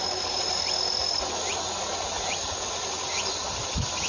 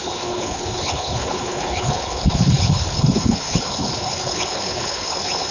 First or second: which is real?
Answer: first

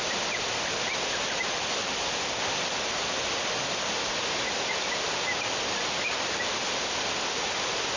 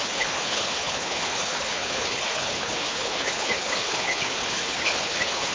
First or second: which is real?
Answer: first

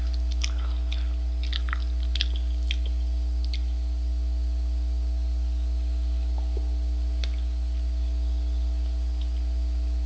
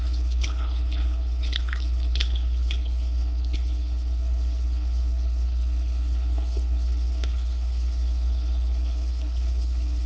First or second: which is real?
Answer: first